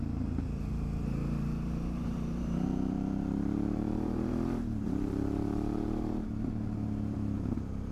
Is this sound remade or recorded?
remade